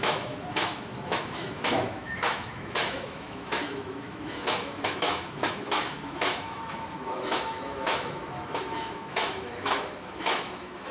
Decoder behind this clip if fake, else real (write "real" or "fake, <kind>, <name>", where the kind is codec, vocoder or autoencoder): fake, autoencoder, DAC-VAE